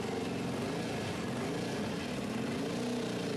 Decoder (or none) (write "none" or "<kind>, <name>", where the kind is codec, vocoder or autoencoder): none